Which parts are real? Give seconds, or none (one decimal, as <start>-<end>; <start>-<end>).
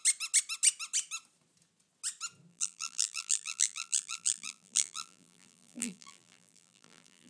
0.0-2.5